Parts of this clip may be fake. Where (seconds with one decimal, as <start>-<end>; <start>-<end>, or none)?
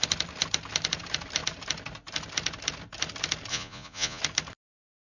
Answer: 3.5-4.2